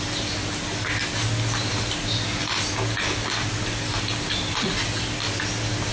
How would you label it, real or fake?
real